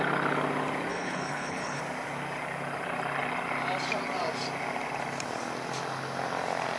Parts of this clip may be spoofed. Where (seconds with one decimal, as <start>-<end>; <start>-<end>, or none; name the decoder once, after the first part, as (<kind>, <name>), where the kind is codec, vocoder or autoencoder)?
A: 0.9-1.8 (codec, HILCodec)

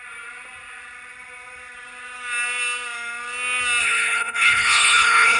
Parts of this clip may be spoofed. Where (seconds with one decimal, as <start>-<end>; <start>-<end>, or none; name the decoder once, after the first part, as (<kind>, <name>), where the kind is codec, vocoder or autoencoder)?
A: 3.8-5.4 (codec, HILCodec)

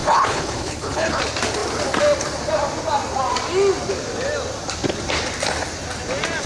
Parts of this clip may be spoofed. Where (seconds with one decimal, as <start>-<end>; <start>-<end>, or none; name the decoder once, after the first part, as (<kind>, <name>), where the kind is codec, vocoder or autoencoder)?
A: 0.0-1.2 (codec, HILCodec)

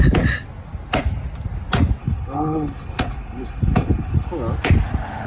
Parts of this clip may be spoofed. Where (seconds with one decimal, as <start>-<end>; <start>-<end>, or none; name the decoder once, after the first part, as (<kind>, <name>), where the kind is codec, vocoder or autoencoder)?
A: 2.0-4.3 (codec, HILCodec)

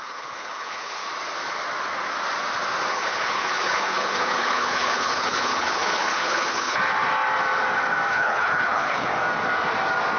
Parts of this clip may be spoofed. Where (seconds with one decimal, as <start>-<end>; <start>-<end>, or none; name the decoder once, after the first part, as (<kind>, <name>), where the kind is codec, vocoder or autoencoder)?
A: 0.0-1.0 (codec, HILCodec); 2.9-6.8; 8.1-9.1

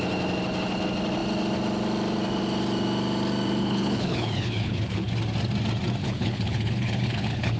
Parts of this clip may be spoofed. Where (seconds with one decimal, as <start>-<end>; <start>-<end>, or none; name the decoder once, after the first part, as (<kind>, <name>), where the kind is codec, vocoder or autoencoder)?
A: 3.6-5.1 (codec, HILCodec); 6.0-7.6

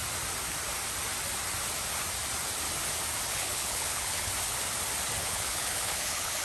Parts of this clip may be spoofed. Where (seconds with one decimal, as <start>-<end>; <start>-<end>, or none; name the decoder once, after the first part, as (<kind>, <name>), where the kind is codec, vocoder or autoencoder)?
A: 3.3-4.3 (codec, HILCodec); 5.2-6.4

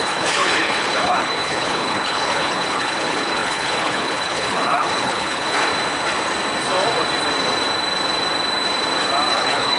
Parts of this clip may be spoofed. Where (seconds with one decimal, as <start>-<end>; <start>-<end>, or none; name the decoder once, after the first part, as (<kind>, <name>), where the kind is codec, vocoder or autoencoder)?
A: 0.0-5.7 (codec, HILCodec); 9.3-9.8